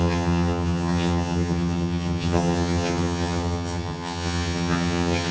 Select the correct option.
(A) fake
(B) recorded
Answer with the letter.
A